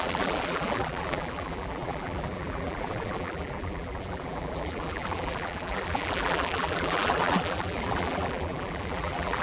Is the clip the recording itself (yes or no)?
no